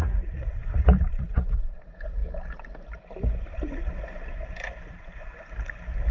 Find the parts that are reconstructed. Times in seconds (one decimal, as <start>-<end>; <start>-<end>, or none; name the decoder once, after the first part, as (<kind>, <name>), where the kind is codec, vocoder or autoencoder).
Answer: 0.0-2.2 (vocoder, Vocos); 3.5-3.9